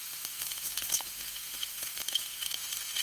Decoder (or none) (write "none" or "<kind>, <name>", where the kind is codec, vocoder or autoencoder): autoencoder, DAC-VAE